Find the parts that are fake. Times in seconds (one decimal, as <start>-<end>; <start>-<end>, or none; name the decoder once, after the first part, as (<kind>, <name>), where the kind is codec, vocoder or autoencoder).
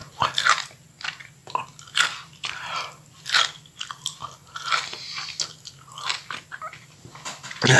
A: none